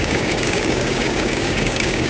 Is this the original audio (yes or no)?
no